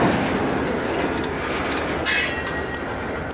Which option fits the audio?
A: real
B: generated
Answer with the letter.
A